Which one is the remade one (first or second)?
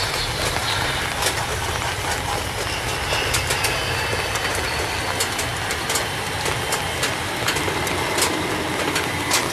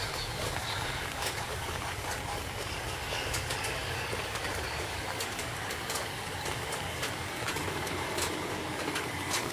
second